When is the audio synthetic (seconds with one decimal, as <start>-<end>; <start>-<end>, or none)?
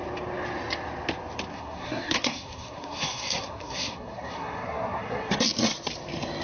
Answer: 1.5-5.3